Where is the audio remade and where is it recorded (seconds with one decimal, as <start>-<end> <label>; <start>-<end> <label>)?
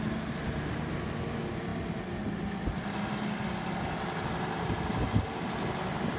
0.0-6.2 recorded